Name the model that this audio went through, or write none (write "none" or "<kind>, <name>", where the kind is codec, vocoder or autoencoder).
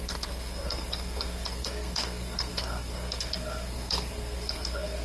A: codec, SNAC